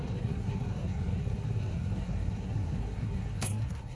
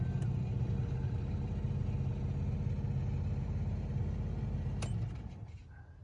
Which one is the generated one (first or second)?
first